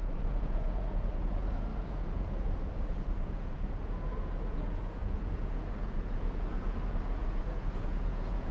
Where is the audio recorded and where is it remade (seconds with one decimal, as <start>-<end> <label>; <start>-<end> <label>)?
0.0-8.5 remade